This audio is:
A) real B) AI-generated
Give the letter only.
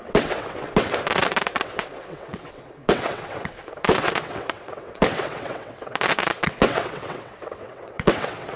B